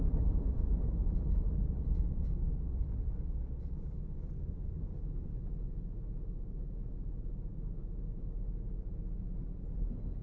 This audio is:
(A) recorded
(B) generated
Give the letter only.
A